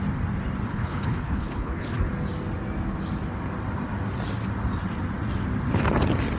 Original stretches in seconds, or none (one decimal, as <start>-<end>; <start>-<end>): 0.0-0.7; 2.0-6.4